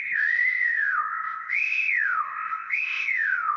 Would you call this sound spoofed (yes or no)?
yes